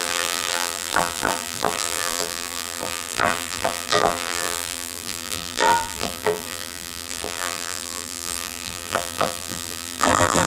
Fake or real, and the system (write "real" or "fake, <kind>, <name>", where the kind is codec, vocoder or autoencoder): fake, vocoder, BigVGAN v2